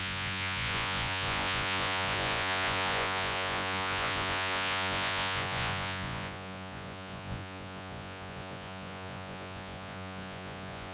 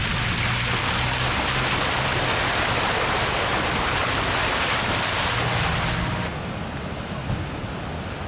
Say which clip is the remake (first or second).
first